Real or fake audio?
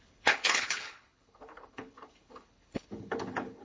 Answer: fake